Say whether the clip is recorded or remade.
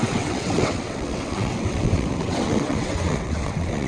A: remade